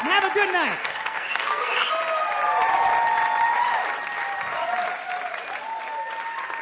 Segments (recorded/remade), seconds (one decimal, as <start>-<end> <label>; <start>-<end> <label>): 0.0-0.8 recorded; 0.8-1.9 remade; 1.9-6.6 recorded